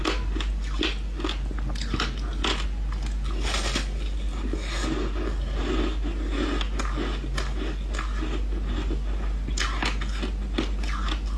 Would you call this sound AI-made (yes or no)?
no